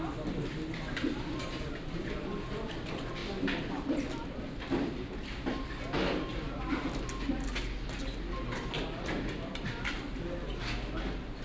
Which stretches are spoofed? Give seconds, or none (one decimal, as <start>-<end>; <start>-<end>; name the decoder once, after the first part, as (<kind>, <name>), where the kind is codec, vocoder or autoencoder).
none